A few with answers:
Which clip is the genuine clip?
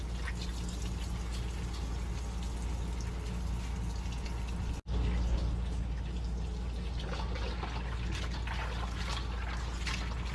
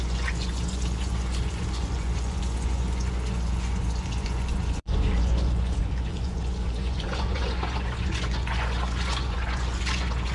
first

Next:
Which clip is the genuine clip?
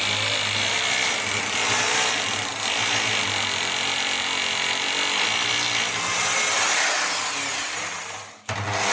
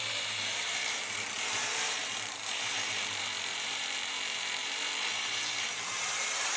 first